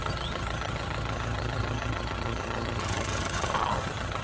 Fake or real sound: fake